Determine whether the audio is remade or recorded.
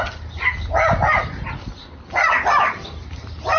recorded